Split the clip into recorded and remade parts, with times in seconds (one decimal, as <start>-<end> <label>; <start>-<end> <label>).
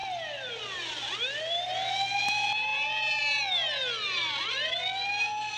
0.0-5.6 recorded